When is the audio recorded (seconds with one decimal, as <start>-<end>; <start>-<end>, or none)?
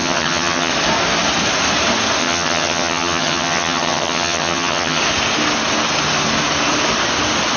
0.7-2.2; 5.0-7.6